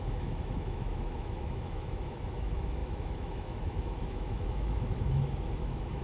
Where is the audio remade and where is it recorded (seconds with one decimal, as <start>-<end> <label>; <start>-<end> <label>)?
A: 0.0-6.0 remade